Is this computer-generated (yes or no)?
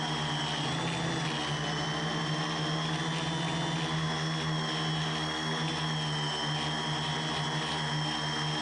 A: no